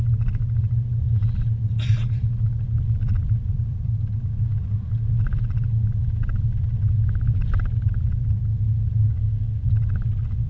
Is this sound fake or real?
real